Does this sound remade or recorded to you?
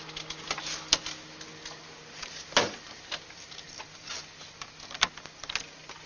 recorded